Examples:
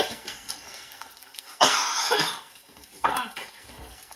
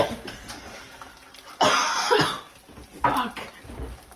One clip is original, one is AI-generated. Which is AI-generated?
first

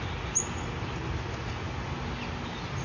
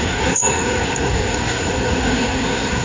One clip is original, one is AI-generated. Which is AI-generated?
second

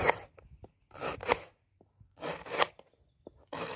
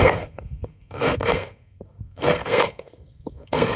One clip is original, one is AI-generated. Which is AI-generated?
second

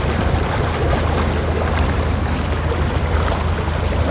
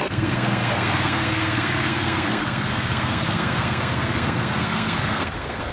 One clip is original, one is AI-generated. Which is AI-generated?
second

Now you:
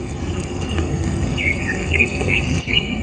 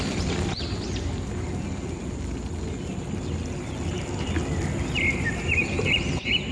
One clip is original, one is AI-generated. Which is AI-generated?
first